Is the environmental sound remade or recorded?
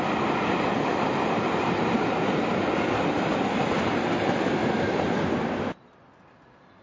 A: recorded